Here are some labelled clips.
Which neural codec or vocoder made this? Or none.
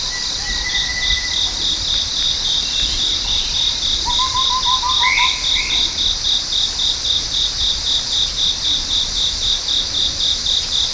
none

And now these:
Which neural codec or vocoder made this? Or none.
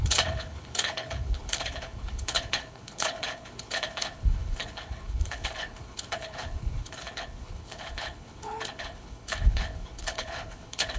codec, HILCodec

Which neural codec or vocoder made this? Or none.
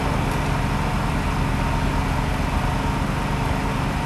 none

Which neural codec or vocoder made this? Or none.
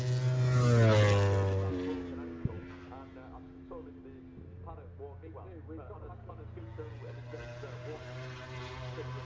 none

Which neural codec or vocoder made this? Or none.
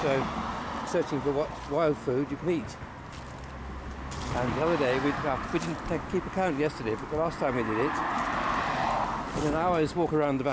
none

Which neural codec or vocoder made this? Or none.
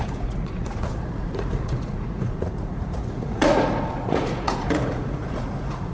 vocoder, Vocos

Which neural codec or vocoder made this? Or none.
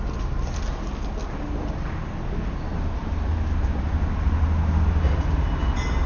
none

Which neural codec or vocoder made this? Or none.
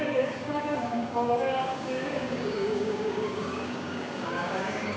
codec, DAC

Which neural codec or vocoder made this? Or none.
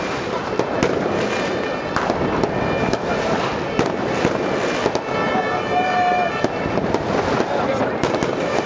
none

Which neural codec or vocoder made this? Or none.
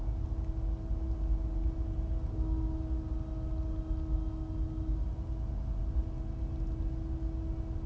none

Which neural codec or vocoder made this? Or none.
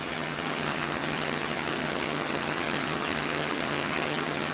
vocoder, HiFi-GAN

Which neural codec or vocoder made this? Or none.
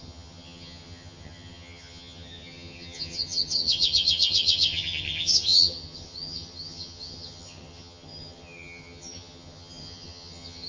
vocoder, HiFi-GAN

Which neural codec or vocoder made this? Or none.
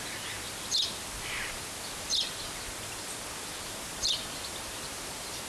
none